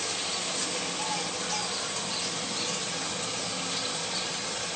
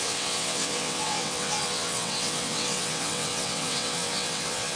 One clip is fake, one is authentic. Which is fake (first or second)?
second